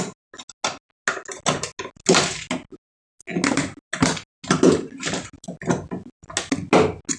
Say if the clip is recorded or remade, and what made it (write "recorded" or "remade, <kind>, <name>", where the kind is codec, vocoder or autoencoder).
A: recorded